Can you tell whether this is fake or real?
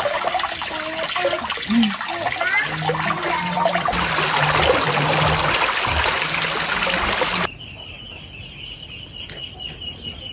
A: real